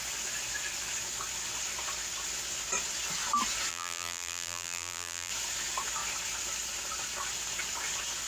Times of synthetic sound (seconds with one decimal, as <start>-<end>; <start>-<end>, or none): 3.7-5.3